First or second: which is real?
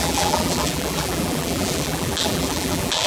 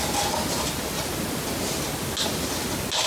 second